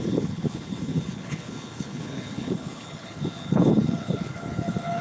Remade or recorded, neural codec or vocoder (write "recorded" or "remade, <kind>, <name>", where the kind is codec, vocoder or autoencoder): remade, codec, HILCodec